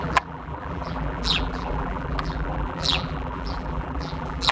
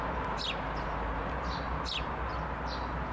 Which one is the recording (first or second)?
second